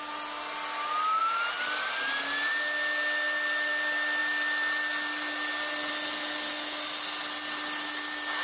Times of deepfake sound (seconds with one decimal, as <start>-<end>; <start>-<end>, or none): none